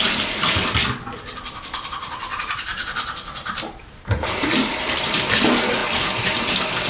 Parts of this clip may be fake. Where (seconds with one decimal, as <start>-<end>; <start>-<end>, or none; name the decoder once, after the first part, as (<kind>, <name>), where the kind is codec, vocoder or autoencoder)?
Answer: 0.0-2.7 (vocoder, BigVGAN v2); 3.8-5.8